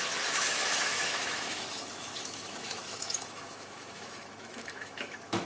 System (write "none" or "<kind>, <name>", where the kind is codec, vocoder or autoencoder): autoencoder, DAC-VAE